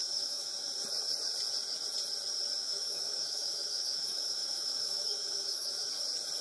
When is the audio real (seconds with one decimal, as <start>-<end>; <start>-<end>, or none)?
0.5-2.6; 5.9-6.4